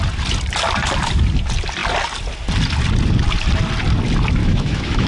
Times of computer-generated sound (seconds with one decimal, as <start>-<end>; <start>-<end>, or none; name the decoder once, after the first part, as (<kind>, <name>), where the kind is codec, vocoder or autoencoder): 4.4-5.1 (autoencoder, DAC-VAE)